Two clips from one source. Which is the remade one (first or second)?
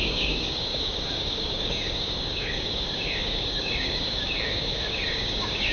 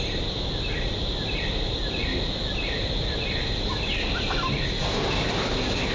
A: first